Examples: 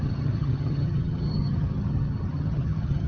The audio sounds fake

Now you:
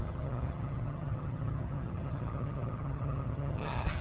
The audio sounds fake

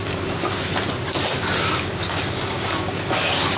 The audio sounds real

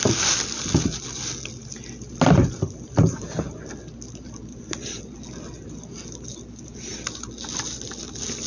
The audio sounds real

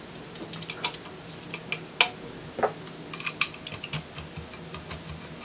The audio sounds real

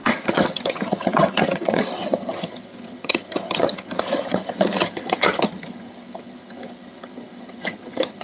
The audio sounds fake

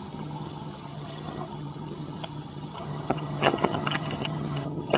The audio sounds fake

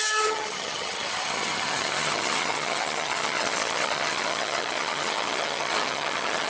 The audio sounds fake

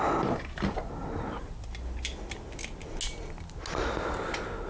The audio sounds real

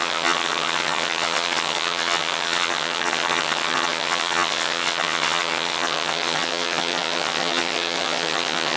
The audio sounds fake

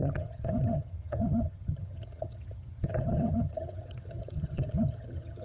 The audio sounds fake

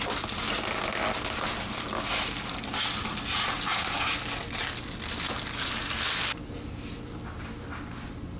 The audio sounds real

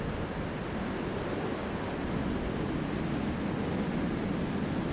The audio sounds real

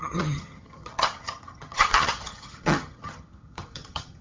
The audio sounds fake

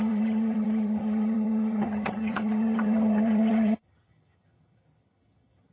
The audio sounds fake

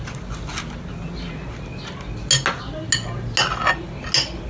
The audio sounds real